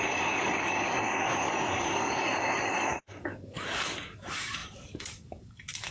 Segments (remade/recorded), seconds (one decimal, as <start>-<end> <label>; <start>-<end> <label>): 0.0-5.9 remade